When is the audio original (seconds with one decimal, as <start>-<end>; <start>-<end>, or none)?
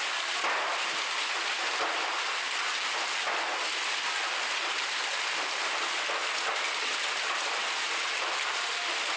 0.0-9.2